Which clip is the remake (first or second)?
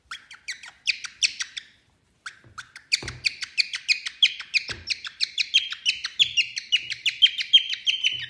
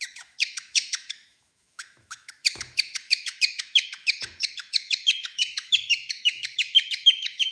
second